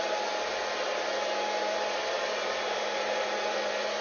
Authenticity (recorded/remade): recorded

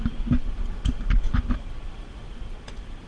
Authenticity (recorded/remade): recorded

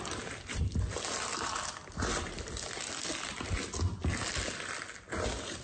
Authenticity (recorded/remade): recorded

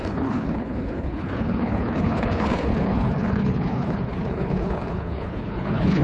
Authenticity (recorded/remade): remade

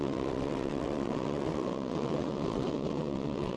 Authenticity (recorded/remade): remade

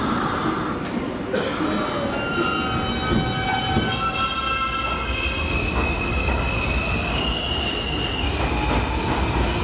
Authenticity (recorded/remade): recorded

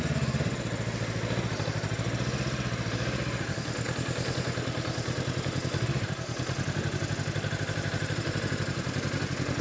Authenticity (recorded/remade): recorded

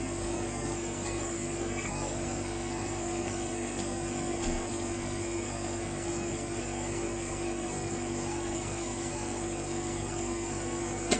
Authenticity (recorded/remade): remade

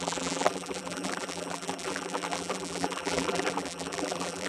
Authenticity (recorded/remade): remade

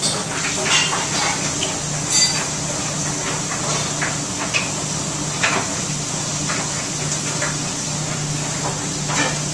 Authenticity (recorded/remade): recorded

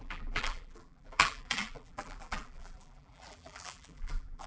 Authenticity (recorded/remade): remade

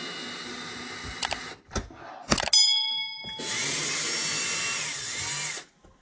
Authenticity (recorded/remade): recorded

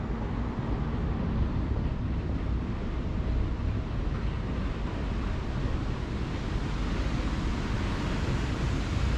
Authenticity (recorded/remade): recorded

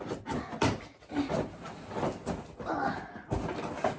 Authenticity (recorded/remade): recorded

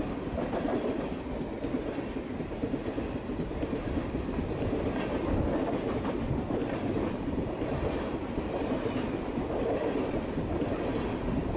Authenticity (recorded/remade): recorded